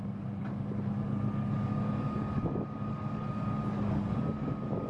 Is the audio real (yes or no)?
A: no